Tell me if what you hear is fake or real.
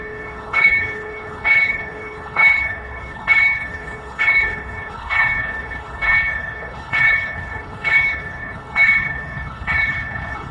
fake